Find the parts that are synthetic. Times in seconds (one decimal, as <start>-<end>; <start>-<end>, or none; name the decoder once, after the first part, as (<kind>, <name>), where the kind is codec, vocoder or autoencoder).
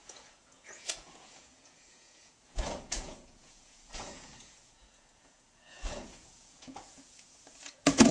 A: 0.0-8.1 (vocoder, Vocos)